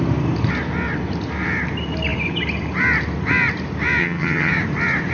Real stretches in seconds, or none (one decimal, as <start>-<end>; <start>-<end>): 0.0-4.0; 4.5-5.1

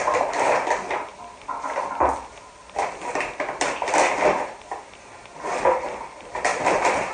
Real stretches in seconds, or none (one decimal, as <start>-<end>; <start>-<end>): 0.0-7.1

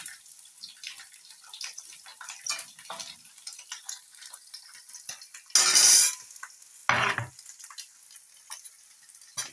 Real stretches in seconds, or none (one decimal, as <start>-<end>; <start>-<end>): 0.0-9.5

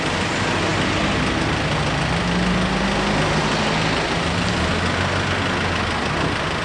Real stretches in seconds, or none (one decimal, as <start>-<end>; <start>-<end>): 0.0-6.6